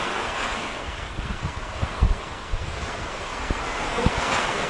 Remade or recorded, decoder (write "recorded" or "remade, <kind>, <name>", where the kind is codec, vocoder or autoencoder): remade, codec, SNAC